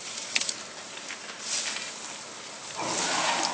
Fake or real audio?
real